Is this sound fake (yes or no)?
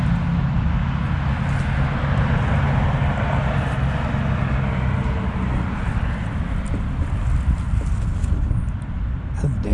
no